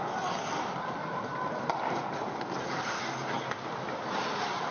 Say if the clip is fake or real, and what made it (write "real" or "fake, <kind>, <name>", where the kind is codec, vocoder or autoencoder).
real